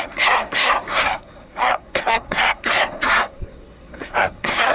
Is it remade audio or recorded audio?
remade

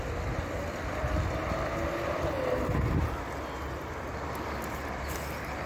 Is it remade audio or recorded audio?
recorded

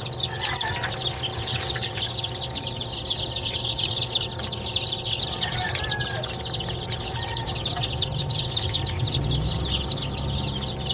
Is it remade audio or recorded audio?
recorded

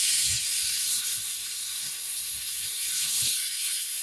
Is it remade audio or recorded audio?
remade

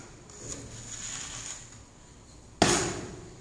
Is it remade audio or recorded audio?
recorded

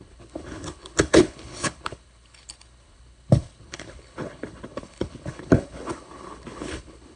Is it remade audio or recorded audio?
remade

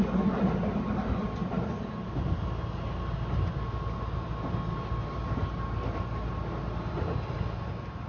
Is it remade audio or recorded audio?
recorded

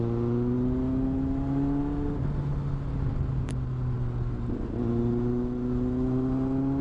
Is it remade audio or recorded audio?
recorded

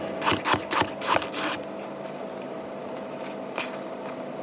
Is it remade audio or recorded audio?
recorded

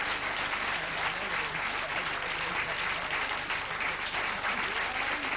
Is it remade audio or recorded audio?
recorded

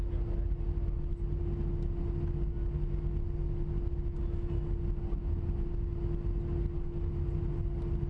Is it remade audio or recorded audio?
recorded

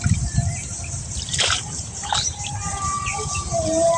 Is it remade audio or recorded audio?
remade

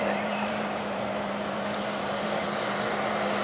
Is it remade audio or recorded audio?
remade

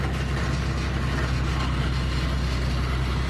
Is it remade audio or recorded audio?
recorded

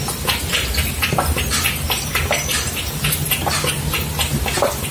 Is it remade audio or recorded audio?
recorded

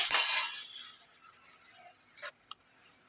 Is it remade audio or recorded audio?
remade